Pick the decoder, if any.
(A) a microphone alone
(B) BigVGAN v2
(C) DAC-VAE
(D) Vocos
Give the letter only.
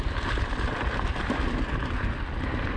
A